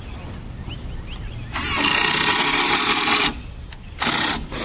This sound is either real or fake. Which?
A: real